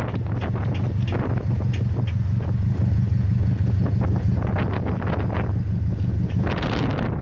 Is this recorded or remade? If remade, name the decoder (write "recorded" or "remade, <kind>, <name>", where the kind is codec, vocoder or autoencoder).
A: recorded